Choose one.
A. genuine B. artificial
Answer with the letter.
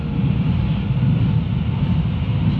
A